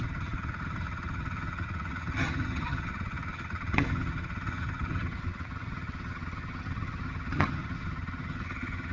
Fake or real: fake